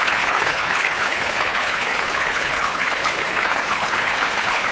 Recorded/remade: remade